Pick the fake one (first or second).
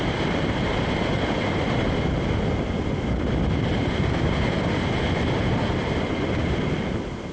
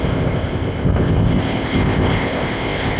second